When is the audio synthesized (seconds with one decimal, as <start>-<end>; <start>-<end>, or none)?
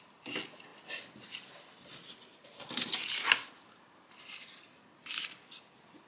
none